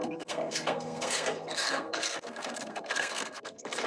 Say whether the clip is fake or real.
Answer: fake